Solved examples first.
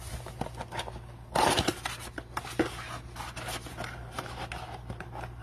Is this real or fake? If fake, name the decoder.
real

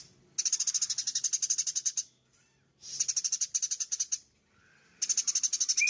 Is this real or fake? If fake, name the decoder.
real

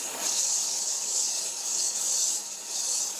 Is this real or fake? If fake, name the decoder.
fake, codec, DAC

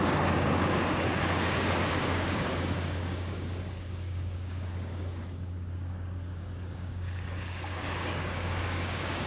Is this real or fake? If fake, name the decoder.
fake, codec, DAC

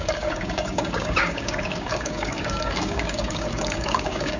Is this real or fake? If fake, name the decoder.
fake, codec, DAC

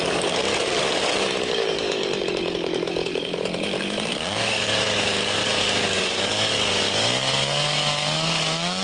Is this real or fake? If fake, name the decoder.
fake, codec, DAC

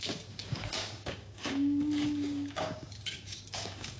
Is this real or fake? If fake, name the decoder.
fake, codec, DAC